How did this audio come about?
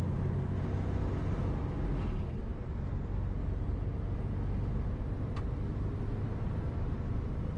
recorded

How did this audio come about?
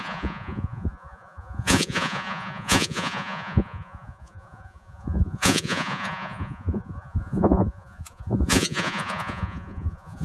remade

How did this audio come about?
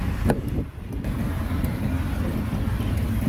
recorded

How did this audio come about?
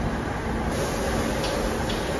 recorded